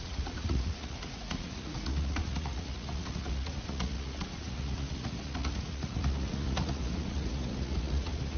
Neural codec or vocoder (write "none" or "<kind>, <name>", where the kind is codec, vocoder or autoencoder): vocoder, Vocos